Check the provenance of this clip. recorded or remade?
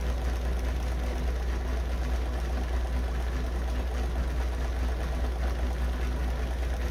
recorded